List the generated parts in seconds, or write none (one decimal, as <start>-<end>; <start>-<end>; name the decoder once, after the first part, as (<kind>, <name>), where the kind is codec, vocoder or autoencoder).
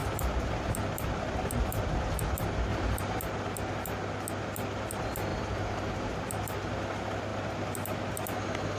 2.7-3.2 (vocoder, BigVGAN v2); 5.3-6.1